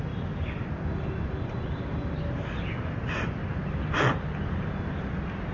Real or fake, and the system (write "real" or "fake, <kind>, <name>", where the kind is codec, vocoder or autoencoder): real